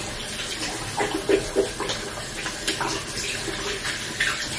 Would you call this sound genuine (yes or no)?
yes